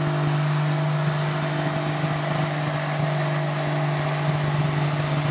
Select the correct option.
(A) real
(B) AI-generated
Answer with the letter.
A